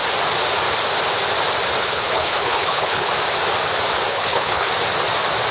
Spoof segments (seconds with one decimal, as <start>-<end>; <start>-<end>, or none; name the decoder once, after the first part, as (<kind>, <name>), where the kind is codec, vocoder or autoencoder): 1.8-3.1 (codec, HILCodec); 4.1-4.7

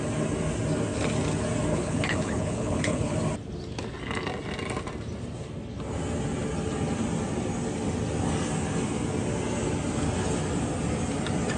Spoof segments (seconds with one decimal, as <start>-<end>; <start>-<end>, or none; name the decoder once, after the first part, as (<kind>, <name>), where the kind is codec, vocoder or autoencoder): 1.7-3.1 (codec, HILCodec)

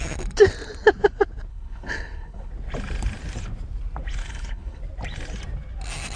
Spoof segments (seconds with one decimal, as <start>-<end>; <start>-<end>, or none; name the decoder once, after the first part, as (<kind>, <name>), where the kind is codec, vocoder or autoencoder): 1.5-2.5 (codec, HILCodec); 4.2-4.8